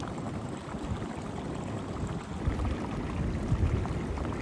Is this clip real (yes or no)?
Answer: yes